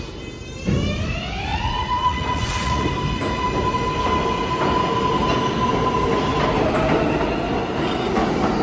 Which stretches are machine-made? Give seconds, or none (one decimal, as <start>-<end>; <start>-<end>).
1.5-2.9